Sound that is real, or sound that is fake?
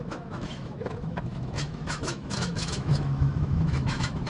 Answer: fake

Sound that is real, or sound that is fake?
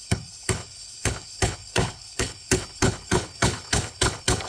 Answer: fake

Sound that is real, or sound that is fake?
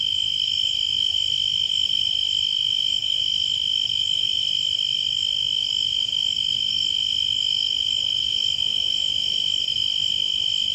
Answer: real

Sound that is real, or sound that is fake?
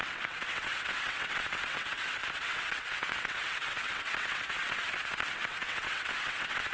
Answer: fake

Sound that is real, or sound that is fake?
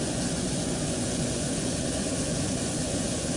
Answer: fake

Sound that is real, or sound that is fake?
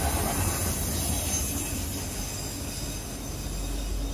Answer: real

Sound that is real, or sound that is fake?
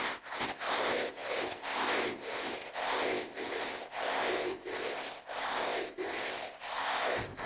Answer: fake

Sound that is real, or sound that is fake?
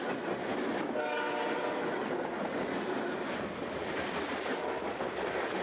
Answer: real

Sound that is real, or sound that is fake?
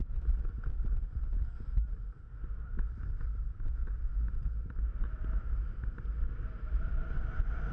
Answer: real